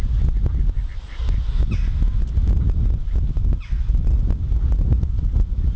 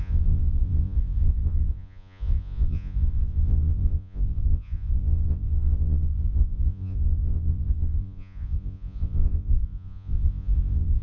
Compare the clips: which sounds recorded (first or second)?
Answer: first